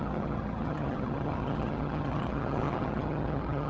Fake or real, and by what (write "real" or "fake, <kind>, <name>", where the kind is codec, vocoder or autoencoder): fake, vocoder, HiFi-GAN